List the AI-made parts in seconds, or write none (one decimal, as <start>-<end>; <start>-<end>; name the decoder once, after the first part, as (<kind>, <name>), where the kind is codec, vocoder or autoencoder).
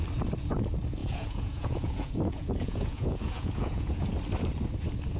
1.0-4.1 (vocoder, Vocos)